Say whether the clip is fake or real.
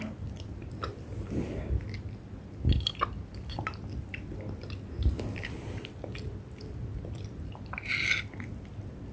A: real